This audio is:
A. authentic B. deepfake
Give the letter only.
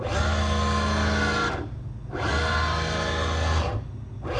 A